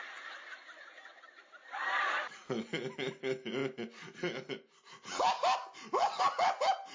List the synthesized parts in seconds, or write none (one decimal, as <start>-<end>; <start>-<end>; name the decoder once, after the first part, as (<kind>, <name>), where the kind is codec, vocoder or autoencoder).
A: none